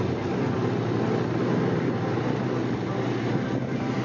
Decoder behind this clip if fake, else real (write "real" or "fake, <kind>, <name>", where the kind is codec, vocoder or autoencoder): real